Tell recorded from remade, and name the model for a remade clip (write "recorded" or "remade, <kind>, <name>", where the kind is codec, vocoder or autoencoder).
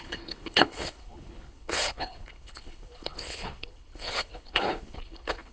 remade, codec, HILCodec